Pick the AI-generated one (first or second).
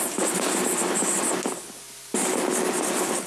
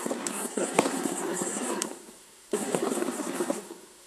second